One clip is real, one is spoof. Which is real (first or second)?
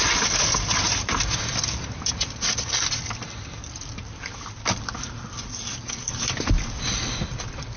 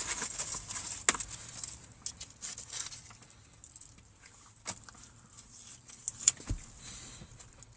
second